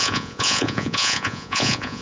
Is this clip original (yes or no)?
no